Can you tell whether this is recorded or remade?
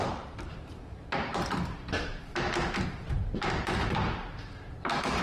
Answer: remade